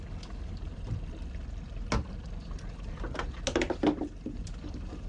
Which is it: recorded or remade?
recorded